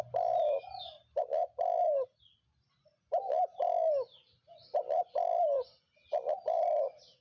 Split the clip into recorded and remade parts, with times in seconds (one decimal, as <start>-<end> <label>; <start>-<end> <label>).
0.0-7.2 recorded